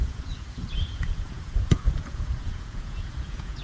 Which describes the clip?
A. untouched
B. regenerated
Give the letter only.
B